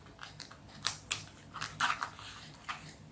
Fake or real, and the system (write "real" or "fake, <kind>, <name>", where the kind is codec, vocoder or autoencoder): real